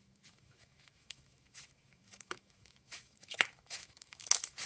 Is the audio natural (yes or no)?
no